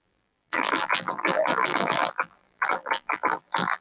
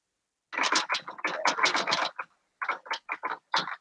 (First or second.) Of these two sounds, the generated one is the first